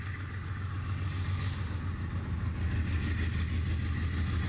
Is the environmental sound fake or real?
real